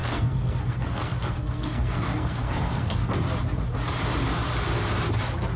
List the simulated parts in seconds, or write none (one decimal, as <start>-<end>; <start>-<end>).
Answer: 0.0-3.1